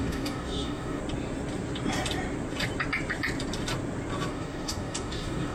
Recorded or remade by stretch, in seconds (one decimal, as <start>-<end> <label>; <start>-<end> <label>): 0.0-1.0 remade; 1.0-4.3 recorded; 4.3-5.5 remade